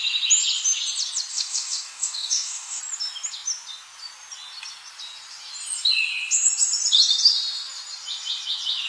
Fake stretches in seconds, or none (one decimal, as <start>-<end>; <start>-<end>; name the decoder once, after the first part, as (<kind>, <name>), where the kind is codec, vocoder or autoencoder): 1.3-2.8 (codec, DAC)